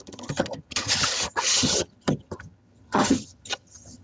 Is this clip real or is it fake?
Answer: fake